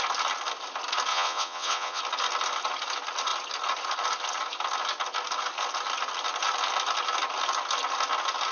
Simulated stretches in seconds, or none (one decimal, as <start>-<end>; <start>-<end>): 1.1-2.0